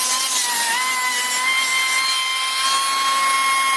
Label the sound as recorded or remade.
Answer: recorded